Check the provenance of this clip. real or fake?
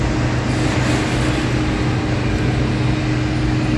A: real